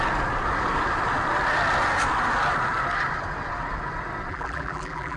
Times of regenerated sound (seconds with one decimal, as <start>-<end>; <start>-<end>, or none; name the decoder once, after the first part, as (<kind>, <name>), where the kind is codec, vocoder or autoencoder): 4.3-5.2 (vocoder, BigVGAN v2)